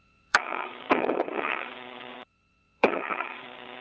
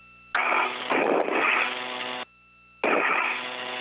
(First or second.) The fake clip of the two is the first